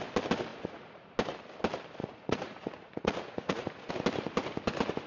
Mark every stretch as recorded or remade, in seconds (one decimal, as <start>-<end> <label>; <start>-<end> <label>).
0.0-0.5 recorded; 0.5-1.1 remade; 1.1-2.0 recorded; 2.0-3.9 remade; 3.9-5.1 recorded